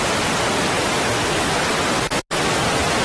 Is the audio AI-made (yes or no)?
no